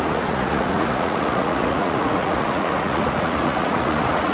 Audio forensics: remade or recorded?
remade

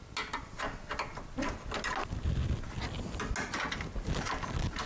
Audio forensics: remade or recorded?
recorded